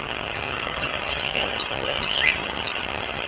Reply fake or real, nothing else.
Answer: fake